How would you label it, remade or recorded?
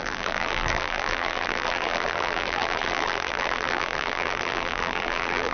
remade